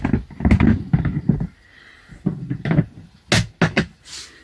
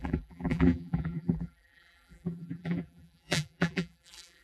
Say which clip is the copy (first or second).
second